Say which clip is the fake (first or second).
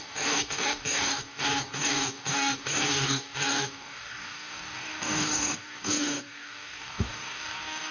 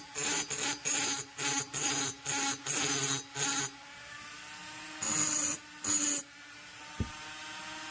first